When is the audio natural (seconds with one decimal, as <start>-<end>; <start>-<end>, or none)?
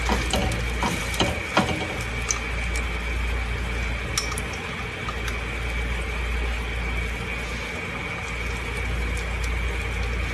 0.0-10.3